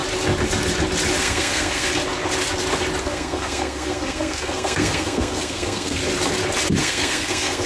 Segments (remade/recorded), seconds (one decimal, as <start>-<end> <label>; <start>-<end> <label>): 0.0-1.2 recorded; 1.2-1.9 remade; 1.9-3.0 recorded; 3.0-6.0 remade; 6.0-6.8 recorded; 6.8-7.7 remade